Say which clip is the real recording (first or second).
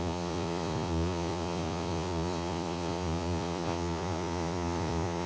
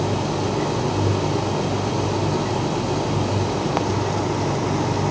second